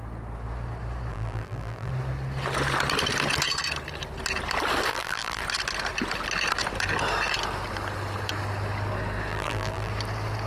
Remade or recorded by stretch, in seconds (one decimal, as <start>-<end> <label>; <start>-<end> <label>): 0.0-1.1 recorded; 1.1-1.9 remade; 1.9-4.9 recorded; 4.9-5.4 remade; 5.4-9.3 recorded; 9.3-9.9 remade; 9.9-10.5 recorded